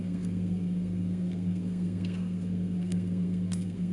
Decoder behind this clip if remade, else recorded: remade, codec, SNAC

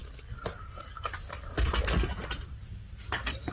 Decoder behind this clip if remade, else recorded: recorded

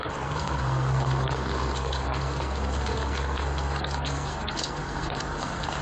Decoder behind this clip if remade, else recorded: remade, codec, SNAC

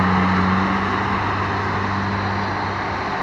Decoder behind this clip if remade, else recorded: recorded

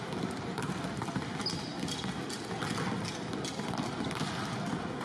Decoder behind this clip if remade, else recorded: recorded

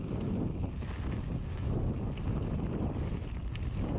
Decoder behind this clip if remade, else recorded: recorded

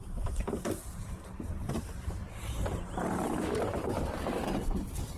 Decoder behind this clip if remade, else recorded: remade, vocoder, BigVGAN v2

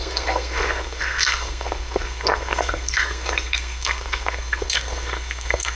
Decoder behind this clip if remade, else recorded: remade, codec, SNAC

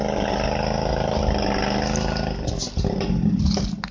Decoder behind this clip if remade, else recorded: recorded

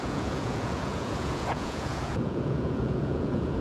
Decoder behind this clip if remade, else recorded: remade, vocoder, Vocos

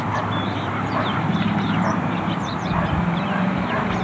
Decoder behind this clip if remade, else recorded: remade, vocoder, BigVGAN v2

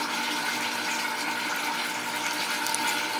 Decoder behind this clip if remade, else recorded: recorded